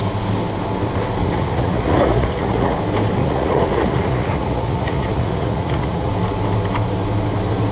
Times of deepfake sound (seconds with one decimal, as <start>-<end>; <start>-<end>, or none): 1.2-2.8; 3.2-6.1